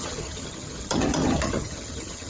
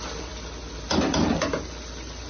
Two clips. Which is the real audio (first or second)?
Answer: second